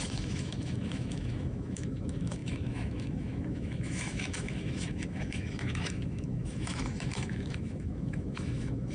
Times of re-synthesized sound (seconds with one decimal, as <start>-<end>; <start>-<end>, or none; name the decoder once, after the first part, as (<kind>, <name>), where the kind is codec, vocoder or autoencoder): 0.0-8.9 (autoencoder, DAC-VAE)